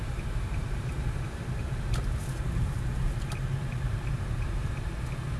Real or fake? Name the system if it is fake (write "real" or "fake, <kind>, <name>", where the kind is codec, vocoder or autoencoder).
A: fake, vocoder, BigVGAN v2